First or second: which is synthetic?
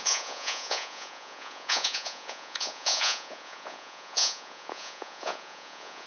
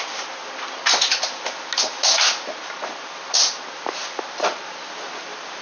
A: first